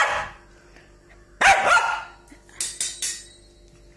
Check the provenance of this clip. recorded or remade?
recorded